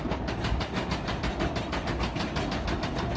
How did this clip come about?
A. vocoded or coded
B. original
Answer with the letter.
B